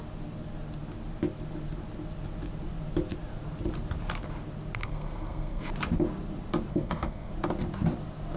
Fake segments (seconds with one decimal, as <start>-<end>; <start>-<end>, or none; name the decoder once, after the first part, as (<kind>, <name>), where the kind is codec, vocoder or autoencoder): 4.8-5.7 (codec, SNAC); 6.7-7.3